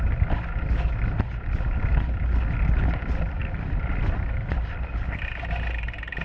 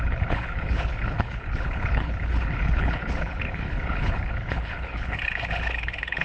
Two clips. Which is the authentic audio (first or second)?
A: first